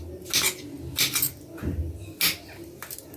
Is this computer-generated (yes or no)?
no